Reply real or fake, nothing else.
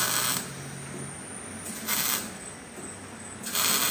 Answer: real